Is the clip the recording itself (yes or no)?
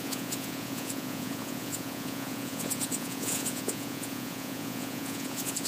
no